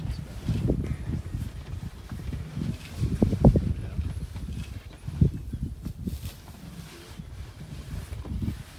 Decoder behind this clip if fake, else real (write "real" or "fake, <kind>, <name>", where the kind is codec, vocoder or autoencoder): real